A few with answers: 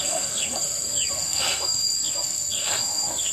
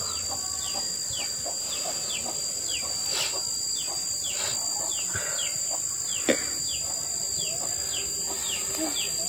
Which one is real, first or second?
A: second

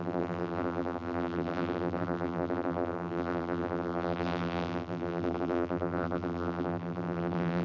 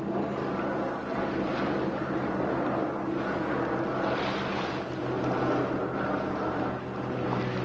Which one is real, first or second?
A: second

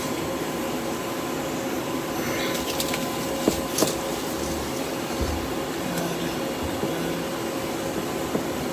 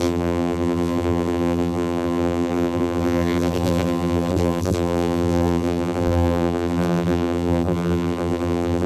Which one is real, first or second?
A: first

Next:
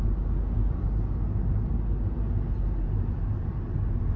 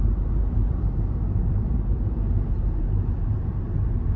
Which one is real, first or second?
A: first